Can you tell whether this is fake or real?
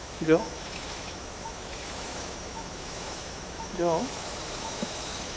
fake